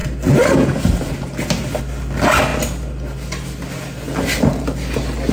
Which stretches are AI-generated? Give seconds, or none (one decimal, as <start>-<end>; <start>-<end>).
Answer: none